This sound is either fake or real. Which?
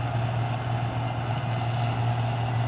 real